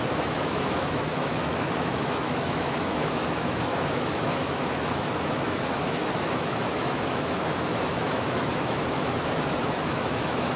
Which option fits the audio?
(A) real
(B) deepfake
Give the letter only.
B